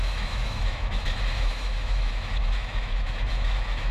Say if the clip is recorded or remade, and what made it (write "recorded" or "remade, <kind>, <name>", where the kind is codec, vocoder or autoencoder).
remade, autoencoder, DAC-VAE